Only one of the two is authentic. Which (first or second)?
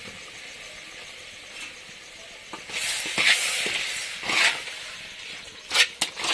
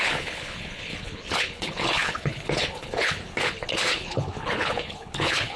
first